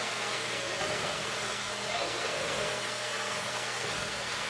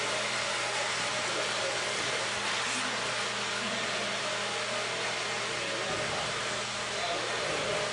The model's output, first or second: first